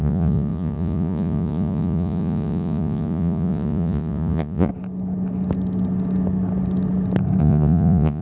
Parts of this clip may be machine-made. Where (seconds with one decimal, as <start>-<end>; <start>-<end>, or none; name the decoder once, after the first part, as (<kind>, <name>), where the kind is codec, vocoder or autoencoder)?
0.0-4.7 (vocoder, Vocos); 7.4-8.2